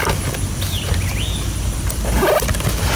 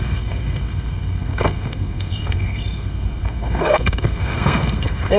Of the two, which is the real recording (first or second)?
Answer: first